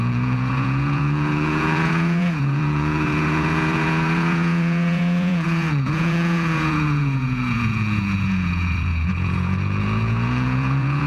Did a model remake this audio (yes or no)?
yes